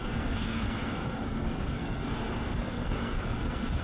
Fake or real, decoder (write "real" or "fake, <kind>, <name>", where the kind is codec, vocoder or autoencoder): fake, codec, SNAC